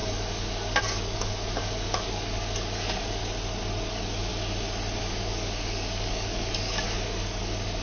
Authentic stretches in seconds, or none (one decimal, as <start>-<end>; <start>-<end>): 3.2-3.9; 4.3-5.0